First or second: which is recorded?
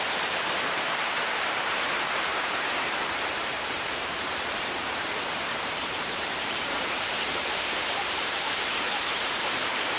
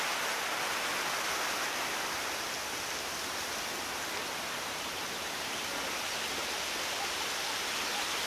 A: second